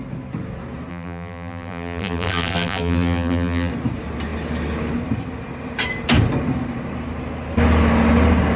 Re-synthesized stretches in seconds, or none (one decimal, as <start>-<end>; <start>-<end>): 0.9-3.7